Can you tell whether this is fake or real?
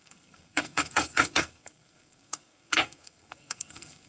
fake